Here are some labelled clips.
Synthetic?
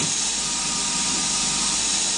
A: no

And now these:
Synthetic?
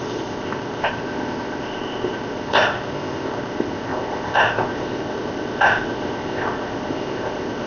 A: yes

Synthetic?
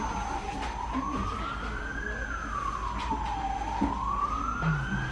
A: no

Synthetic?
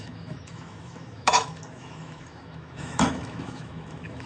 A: yes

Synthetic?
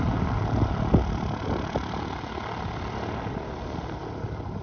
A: no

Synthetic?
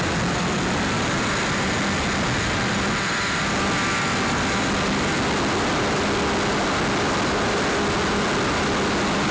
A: no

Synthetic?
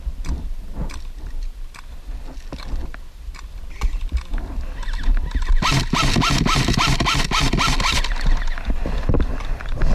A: no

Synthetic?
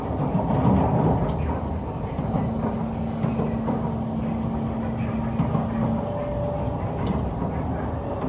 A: no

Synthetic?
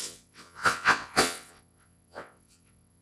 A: yes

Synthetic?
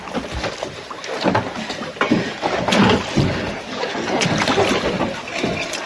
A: no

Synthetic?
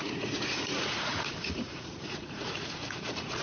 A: yes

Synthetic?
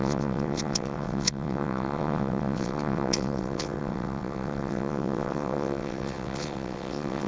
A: yes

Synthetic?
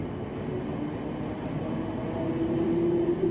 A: no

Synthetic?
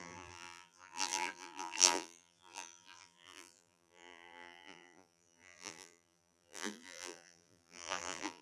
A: yes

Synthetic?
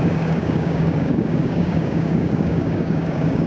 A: yes